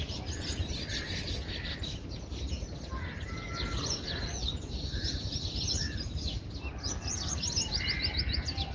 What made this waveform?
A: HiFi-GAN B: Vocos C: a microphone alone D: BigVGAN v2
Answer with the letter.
C